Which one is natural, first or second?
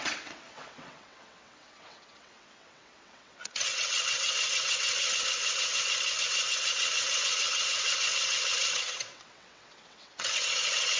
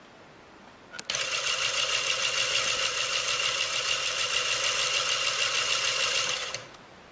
second